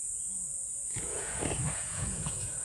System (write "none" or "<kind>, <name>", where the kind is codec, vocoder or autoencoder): vocoder, Vocos